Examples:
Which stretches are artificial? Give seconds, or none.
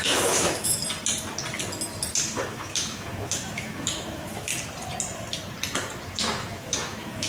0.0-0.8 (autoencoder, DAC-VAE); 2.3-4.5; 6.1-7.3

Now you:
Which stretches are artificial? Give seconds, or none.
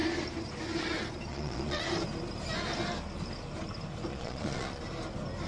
1.3-1.8 (vocoder, Vocos); 4.1-4.8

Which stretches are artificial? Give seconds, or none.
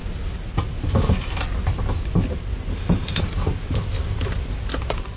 2.7-3.2 (autoencoder, DAC-VAE)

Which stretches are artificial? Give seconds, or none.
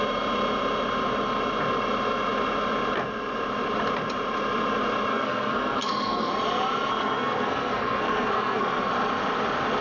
5.1-6.3 (codec, SNAC); 6.9-8.9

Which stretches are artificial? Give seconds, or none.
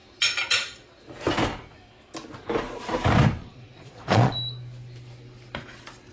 3.4-4.3 (vocoder, Vocos)